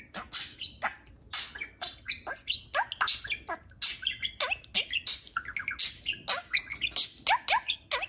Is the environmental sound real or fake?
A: real